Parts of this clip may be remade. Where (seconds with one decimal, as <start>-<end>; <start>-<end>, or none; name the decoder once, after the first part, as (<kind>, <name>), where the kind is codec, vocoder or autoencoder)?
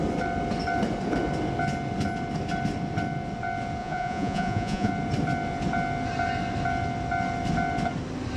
3.8-4.9 (vocoder, Vocos)